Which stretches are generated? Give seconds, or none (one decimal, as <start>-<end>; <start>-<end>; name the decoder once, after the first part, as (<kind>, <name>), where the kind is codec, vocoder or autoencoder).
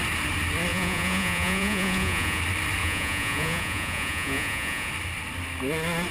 0.7-2.4 (vocoder, Vocos); 2.8-4.9